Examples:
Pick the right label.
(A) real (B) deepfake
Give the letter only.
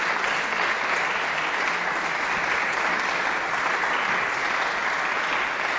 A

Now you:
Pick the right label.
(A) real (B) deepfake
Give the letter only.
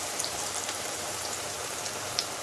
B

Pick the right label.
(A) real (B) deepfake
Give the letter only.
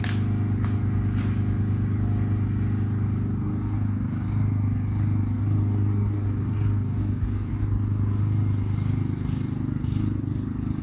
A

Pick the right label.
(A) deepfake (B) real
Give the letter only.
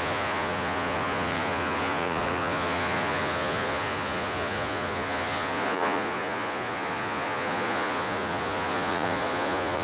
A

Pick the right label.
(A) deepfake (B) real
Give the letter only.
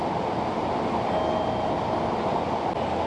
B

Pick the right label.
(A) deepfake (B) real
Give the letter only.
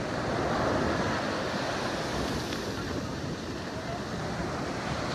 B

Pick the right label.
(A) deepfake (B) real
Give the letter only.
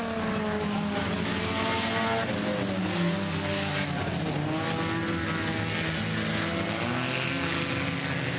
B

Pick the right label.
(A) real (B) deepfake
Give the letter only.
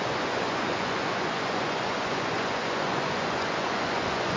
B